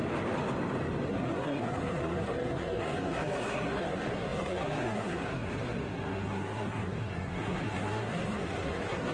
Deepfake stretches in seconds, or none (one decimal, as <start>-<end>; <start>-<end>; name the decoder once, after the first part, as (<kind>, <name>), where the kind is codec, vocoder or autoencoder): 1.1-9.1 (codec, SNAC)